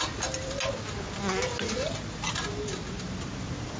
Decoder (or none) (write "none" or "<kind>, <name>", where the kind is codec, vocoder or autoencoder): none